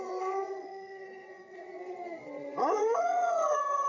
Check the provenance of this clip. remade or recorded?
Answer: remade